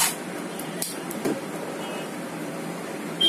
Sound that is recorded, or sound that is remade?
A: remade